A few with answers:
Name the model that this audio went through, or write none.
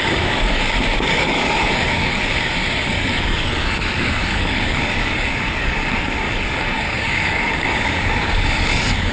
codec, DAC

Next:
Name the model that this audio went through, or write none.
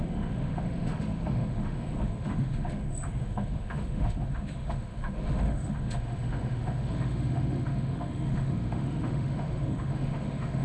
autoencoder, DAC-VAE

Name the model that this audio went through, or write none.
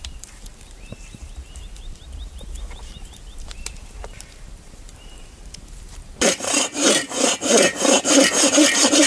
vocoder, BigVGAN v2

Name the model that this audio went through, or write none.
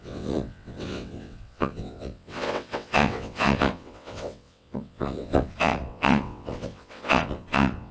vocoder, WaveNeXt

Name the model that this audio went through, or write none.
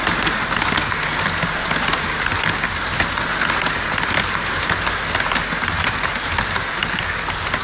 none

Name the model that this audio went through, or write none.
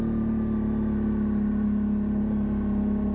none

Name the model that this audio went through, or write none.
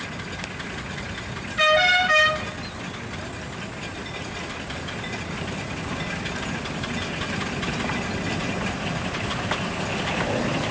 none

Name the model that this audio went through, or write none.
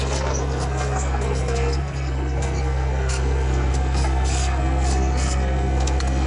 codec, SNAC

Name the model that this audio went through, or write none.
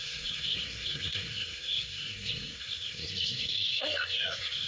codec, SNAC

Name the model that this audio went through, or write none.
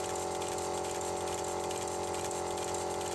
none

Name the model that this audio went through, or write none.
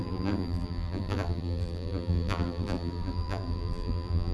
vocoder, BigVGAN v2